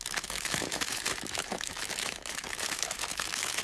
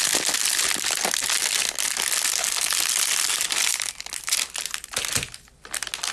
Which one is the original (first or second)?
second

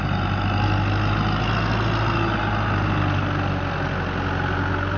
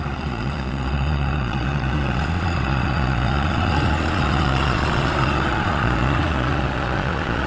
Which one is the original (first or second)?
first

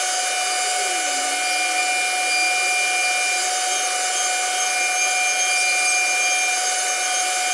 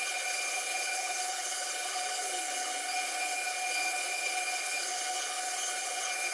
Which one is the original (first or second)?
first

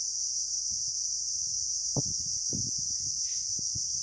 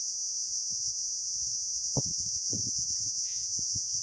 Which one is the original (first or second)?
first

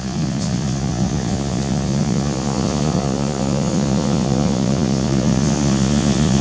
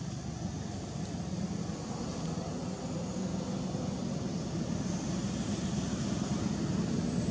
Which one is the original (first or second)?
second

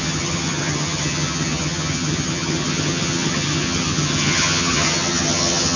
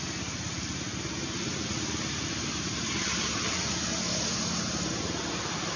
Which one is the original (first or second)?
second